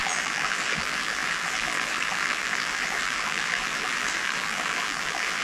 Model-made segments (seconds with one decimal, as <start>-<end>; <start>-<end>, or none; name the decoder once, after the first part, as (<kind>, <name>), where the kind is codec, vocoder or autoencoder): 0.0-5.4 (vocoder, BigVGAN v2)